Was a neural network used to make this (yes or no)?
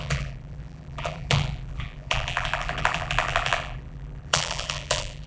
yes